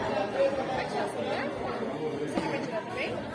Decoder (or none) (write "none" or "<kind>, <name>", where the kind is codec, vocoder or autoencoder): vocoder, BigVGAN v2